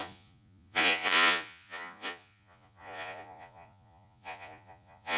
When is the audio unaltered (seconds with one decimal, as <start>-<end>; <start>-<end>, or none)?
none